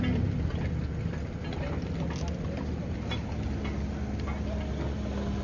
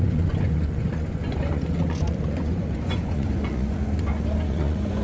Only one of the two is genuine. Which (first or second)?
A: first